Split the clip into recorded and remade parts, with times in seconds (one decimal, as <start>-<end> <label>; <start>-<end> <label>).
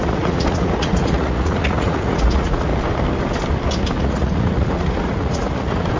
0.0-2.7 remade; 2.7-4.0 recorded; 4.0-6.0 remade